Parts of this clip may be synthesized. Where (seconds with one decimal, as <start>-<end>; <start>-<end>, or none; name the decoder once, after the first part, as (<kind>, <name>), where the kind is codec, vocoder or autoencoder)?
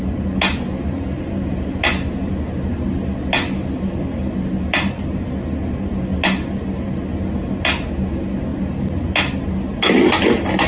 none